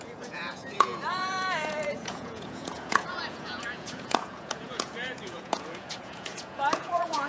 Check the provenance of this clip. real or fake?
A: fake